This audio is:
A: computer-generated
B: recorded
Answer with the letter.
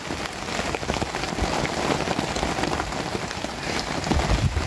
B